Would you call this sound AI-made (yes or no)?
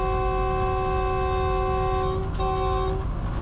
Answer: no